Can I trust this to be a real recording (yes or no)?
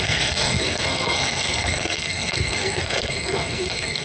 no